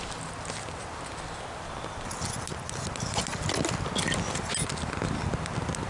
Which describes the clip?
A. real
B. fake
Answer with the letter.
A